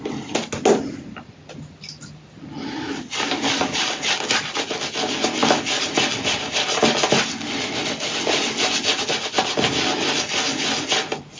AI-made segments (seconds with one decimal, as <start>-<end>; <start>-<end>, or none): none